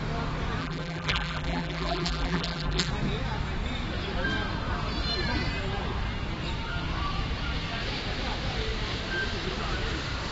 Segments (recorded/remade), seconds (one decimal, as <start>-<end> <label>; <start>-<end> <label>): 0.0-0.6 recorded; 0.6-2.9 remade; 2.9-10.3 recorded